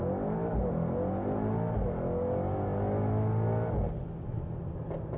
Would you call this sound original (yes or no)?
yes